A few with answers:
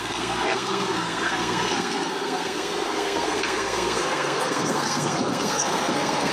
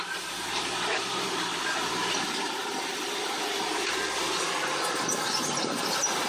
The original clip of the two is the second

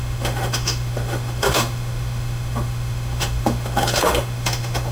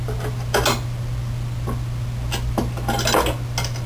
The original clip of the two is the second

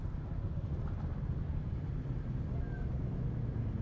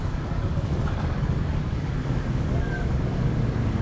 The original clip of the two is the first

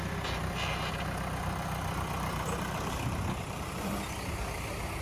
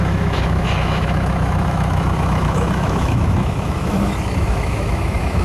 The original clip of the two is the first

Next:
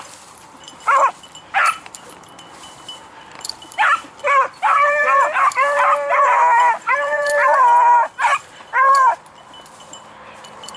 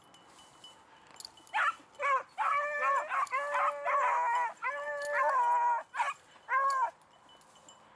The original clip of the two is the second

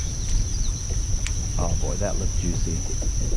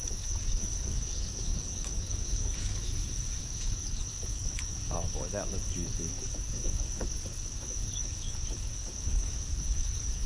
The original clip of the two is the first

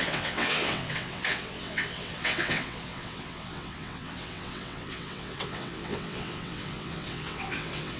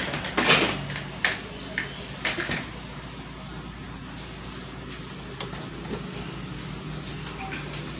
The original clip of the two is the second